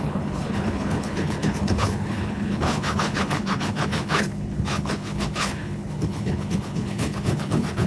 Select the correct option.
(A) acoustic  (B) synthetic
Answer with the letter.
B